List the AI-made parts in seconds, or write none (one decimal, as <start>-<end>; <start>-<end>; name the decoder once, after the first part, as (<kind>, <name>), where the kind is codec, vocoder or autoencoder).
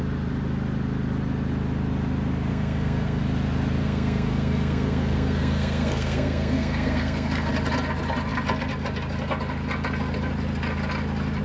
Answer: 2.5-3.2 (codec, SNAC); 3.8-7.5